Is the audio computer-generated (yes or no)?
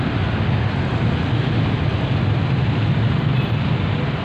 no